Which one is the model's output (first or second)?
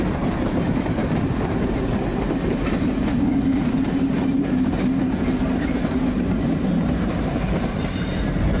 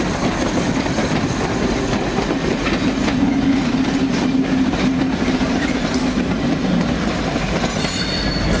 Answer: first